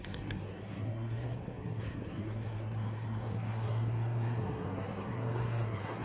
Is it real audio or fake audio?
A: fake